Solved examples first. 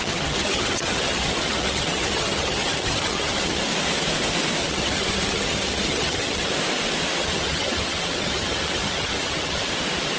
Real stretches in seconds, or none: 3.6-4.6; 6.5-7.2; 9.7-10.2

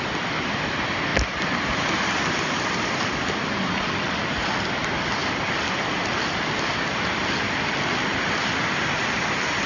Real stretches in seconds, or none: 0.0-9.7